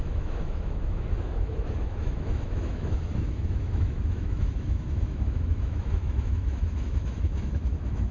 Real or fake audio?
fake